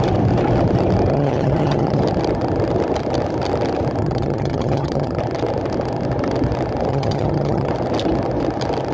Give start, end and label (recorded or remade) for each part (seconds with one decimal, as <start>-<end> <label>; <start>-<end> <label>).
0.0-1.1 recorded; 1.1-2.0 remade; 2.0-4.0 recorded; 4.0-5.2 remade; 5.2-6.9 recorded; 6.9-7.7 remade; 7.7-8.9 recorded